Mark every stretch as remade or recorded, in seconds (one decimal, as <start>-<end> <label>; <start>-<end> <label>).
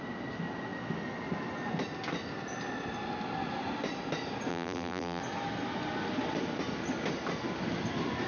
0.0-4.5 recorded; 4.5-5.2 remade; 5.2-8.3 recorded